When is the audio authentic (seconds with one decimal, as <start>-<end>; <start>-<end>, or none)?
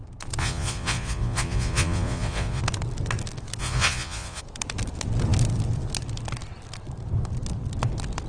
0.0-0.4; 2.6-3.6; 4.4-8.3